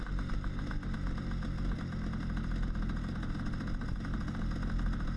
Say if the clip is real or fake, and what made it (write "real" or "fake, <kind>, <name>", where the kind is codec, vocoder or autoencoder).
real